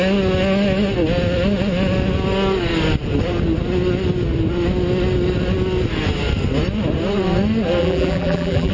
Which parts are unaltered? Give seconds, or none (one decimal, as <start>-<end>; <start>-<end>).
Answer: 0.0-7.8